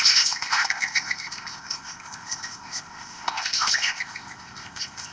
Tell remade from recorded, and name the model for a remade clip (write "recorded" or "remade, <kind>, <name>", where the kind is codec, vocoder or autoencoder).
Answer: remade, codec, ZipCodec